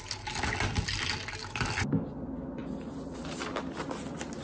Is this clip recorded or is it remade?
recorded